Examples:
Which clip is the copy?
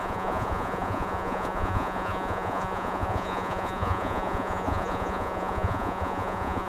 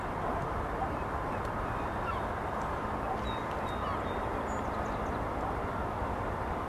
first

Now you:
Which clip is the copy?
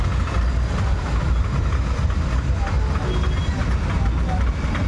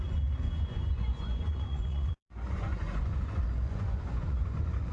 second